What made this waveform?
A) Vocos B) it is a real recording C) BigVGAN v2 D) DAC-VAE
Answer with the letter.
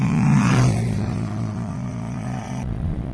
A